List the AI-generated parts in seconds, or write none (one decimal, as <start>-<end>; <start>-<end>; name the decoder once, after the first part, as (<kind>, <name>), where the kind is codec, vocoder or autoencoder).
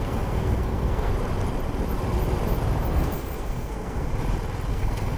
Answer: 0.0-1.1 (codec, SNAC); 2.9-4.1; 4.7-5.2